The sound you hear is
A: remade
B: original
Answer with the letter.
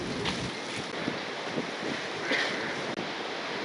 B